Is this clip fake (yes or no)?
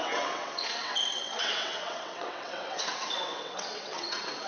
yes